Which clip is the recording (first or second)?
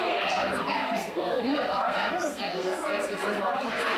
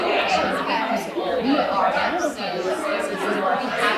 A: second